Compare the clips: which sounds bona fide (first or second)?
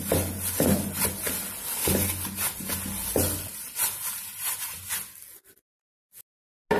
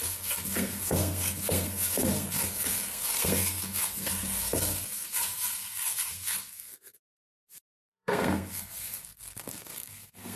first